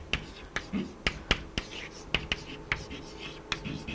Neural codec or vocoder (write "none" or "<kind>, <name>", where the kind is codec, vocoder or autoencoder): none